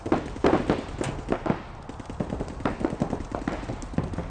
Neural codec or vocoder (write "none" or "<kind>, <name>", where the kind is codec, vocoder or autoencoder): none